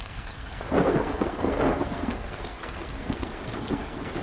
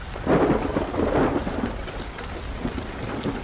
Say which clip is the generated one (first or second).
first